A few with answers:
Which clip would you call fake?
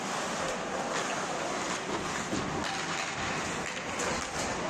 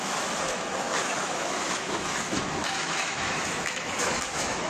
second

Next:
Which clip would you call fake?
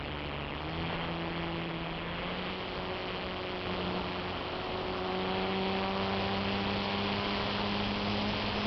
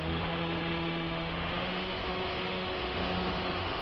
second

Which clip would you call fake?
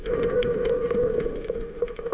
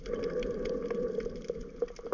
first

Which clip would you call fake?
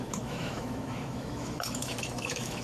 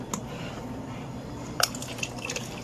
first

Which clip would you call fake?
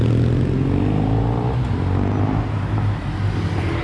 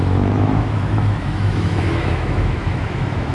second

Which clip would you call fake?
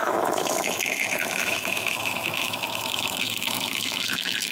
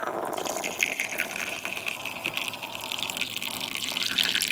first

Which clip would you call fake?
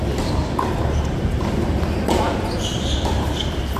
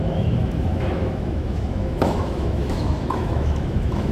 second